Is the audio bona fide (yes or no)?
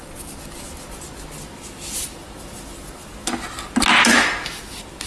yes